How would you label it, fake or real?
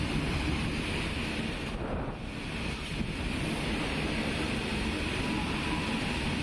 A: real